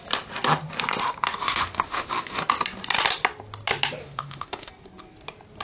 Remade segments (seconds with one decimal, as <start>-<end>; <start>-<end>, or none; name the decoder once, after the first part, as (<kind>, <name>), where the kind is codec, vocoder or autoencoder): 1.4-2.4 (autoencoder, DAC-VAE); 4.0-4.7